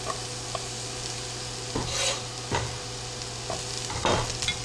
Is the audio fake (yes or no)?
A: no